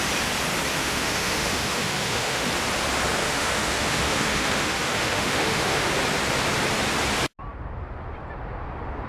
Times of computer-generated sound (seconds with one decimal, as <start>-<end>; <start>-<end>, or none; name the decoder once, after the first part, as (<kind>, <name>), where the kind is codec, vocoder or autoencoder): 0.8-2.5 (autoencoder, DAC-VAE); 3.2-5.9